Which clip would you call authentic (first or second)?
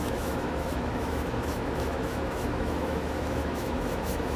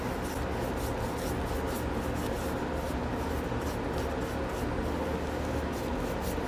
second